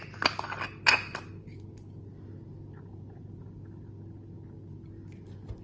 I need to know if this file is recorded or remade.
recorded